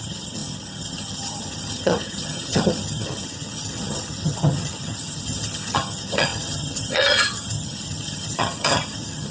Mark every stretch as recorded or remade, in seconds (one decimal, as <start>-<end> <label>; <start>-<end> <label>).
0.0-9.3 remade